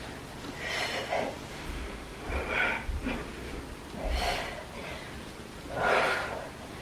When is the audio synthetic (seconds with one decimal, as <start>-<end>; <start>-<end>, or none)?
1.5-2.2